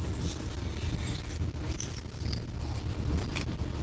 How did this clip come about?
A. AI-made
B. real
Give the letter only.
B